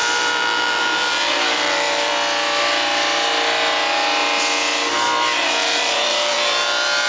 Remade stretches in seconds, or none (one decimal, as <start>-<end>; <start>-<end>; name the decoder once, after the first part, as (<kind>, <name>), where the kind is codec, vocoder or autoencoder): 0.0-2.1 (vocoder, BigVGAN v2); 5.6-7.1